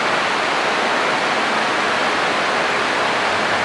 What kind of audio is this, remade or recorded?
recorded